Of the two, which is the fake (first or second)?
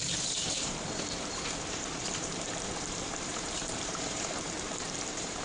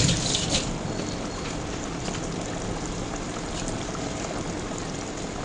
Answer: first